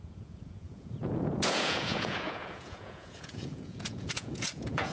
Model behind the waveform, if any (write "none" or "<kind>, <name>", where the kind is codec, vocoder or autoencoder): vocoder, Vocos